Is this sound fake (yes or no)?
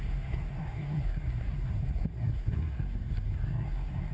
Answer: yes